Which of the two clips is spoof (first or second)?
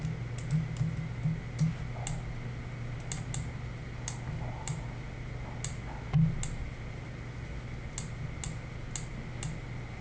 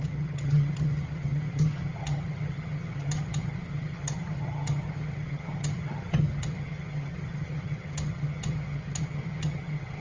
second